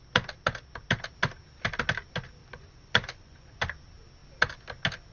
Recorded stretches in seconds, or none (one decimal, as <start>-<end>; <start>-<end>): 0.0-2.4; 3.6-5.1